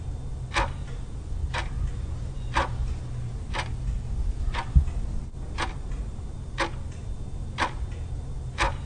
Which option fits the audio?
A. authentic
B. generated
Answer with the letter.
A